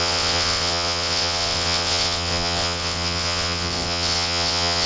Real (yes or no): no